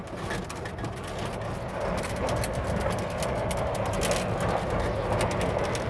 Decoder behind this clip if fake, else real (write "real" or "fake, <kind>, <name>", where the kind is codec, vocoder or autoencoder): real